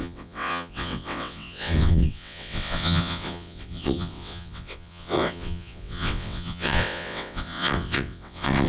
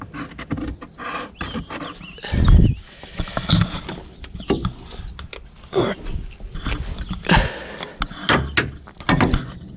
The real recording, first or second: second